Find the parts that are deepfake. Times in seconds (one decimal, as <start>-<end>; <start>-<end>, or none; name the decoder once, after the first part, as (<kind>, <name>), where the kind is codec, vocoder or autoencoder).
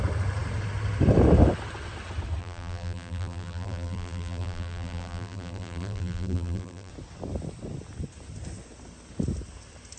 2.4-6.9 (vocoder, BigVGAN v2)